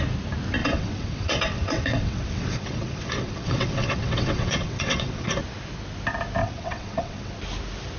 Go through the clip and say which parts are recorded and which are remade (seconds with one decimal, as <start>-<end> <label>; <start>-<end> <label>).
0.0-0.6 recorded; 0.6-5.3 remade; 5.3-6.4 recorded; 6.4-7.3 remade; 7.3-8.0 recorded